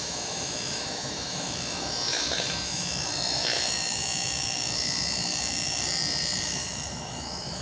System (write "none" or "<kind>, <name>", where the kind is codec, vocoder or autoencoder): autoencoder, DAC-VAE